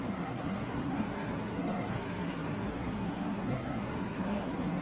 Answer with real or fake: fake